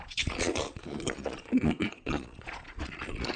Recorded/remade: remade